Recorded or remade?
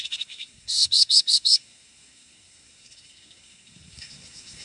remade